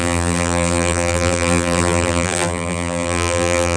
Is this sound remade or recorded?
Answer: remade